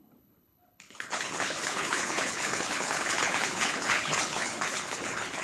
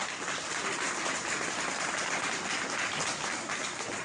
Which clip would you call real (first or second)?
second